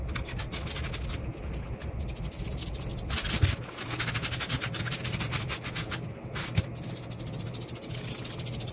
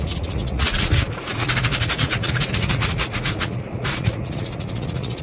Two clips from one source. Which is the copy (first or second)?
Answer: second